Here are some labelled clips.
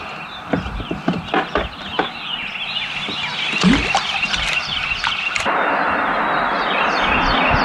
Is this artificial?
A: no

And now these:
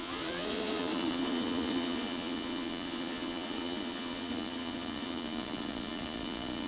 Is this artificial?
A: yes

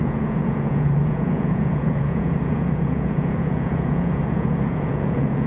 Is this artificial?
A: yes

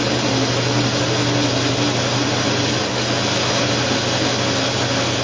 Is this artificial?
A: no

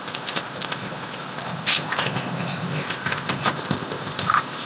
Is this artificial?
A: yes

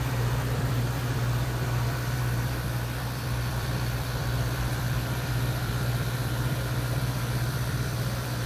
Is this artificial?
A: yes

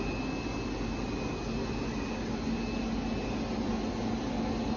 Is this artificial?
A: no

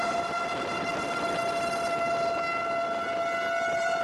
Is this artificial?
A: no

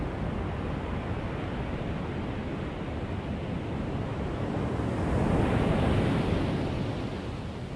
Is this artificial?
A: no